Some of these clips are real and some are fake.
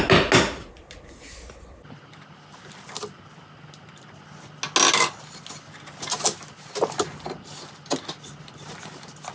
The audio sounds real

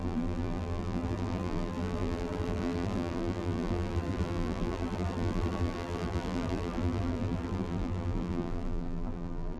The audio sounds fake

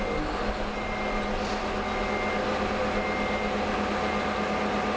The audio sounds real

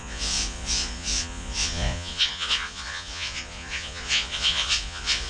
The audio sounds fake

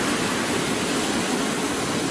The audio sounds real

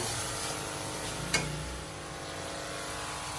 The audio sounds real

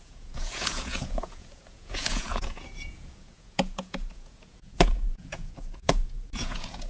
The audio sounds fake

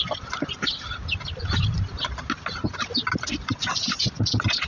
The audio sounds real